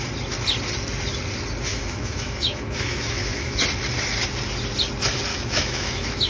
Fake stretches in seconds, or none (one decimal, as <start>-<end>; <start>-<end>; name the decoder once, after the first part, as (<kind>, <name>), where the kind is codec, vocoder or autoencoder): 1.7-3.6 (autoencoder, DAC-VAE); 5.3-6.3